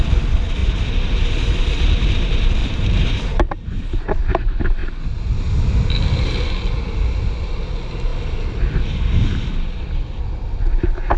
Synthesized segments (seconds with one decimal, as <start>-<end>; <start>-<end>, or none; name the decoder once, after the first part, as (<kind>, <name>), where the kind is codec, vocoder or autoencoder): 0.6-2.0 (vocoder, BigVGAN v2); 2.6-4.2

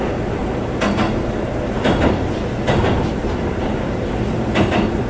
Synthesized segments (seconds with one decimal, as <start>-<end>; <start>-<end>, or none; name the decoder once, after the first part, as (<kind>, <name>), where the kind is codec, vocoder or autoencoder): 0.0-0.4 (vocoder, BigVGAN v2); 3.5-5.1

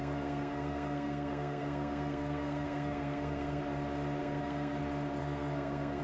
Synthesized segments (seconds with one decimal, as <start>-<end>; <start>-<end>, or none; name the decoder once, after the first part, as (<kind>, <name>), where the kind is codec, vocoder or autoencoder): 0.0-3.6 (codec, SNAC); 4.2-4.8; 5.2-6.0

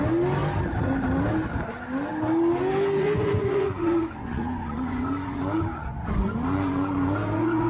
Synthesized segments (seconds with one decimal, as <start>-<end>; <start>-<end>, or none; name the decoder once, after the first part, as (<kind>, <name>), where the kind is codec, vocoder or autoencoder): 3.0-7.7 (vocoder, Vocos)

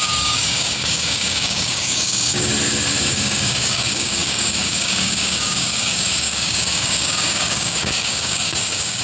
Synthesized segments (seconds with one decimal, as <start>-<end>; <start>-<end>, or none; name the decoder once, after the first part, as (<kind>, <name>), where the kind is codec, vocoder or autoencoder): 0.0-2.5 (codec, DAC); 3.1-9.0

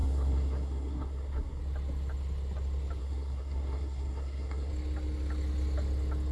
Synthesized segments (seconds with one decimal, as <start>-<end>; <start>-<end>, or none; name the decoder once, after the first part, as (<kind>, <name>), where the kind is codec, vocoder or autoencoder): 0.0-1.6 (codec, SNAC); 3.0-4.7

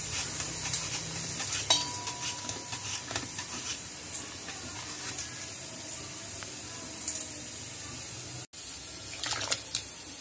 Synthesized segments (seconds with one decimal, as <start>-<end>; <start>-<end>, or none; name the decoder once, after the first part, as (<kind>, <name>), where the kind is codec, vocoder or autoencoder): none

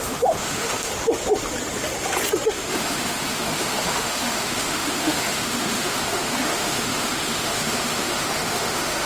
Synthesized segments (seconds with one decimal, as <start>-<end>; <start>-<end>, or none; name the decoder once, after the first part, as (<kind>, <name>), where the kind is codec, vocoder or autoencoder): 0.0-0.9 (autoencoder, DAC-VAE); 2.5-9.1